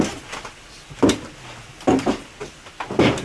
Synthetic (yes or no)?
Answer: no